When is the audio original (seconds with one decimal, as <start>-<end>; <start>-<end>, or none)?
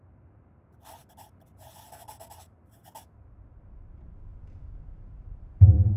1.0-3.3; 4.3-5.3